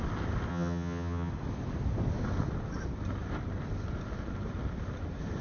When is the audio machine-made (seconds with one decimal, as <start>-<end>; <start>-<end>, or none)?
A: 0.5-1.3